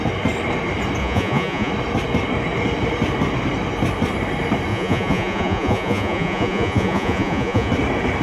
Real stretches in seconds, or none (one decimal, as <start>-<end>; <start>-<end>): 0.0-1.0; 1.7-4.7; 7.7-8.2